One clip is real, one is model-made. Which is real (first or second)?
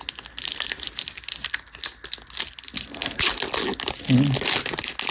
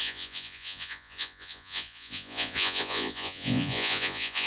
first